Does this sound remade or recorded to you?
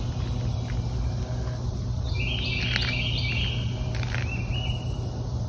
recorded